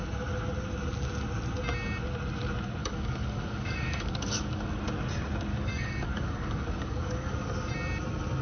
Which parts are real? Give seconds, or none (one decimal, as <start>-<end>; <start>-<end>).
0.0-2.8; 4.8-5.5; 7.7-8.4